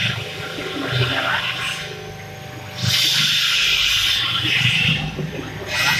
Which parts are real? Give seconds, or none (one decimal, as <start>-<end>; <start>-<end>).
0.6-4.2